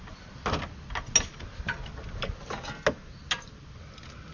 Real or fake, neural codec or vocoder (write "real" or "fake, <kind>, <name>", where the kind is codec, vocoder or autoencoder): real